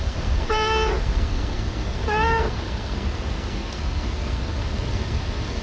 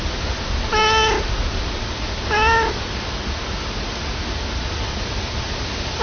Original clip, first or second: second